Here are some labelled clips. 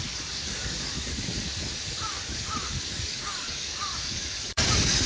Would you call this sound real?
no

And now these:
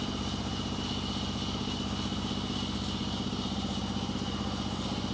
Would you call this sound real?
yes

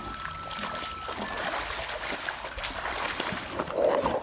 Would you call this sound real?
yes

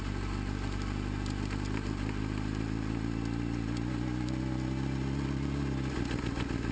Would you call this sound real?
yes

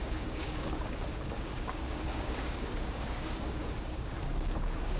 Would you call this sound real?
no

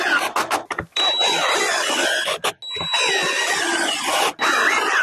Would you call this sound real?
yes